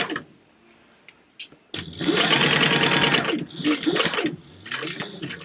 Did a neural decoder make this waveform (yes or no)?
no